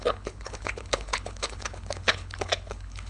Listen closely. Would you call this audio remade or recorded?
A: remade